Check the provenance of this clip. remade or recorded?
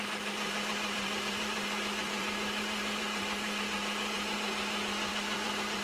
remade